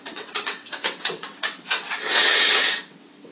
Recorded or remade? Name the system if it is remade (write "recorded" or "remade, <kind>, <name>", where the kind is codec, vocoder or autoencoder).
remade, vocoder, WaveNeXt